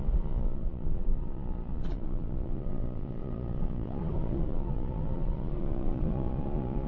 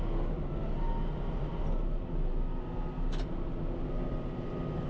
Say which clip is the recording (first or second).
second